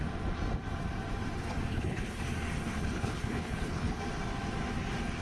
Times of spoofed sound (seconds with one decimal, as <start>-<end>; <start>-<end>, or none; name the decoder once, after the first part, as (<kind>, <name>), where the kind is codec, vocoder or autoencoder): 1.7-2.2 (codec, HILCodec); 2.8-4.0